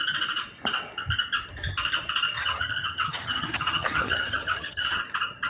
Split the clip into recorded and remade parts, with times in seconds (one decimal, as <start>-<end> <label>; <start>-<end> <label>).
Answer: 0.0-2.4 recorded; 2.4-5.0 remade; 5.0-5.5 recorded

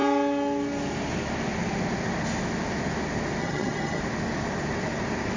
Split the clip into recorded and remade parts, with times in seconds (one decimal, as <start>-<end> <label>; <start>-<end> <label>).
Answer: 0.0-3.4 recorded; 3.4-4.0 remade; 4.0-5.4 recorded